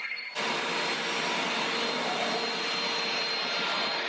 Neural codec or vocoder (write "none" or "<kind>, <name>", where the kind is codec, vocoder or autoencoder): none